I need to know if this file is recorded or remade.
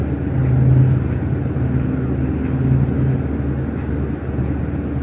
recorded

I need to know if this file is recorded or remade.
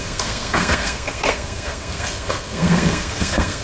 remade